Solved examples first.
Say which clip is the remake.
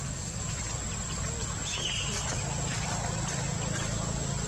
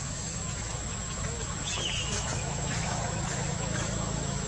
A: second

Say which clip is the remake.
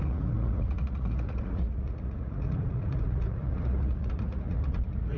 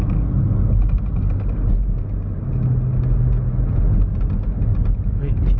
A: first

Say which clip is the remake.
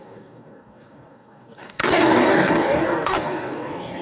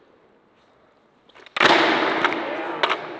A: first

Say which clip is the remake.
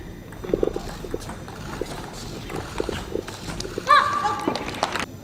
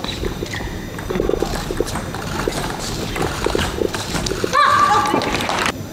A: second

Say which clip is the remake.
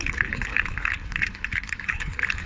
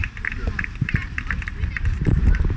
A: first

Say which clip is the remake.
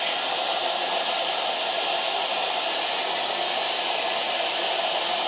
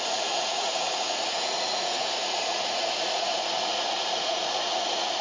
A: second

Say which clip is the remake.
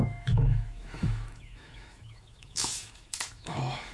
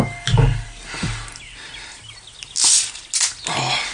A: first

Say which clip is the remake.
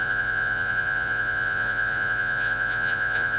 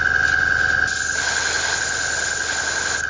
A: first